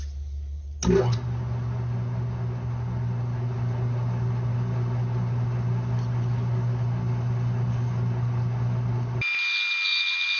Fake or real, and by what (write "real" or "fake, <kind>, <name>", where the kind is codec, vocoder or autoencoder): real